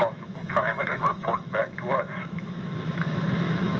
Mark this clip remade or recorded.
remade